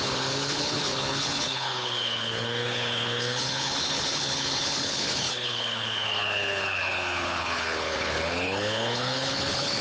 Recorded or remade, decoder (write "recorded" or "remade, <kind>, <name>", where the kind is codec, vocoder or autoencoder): remade, codec, HILCodec